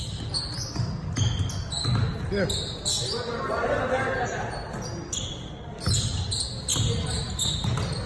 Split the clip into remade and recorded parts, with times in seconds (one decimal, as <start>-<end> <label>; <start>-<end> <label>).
0.0-8.1 recorded